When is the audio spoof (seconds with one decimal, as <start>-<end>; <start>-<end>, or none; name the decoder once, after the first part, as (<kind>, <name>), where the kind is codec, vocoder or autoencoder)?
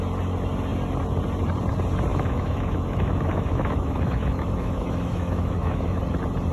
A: 2.1-6.0 (autoencoder, DAC-VAE)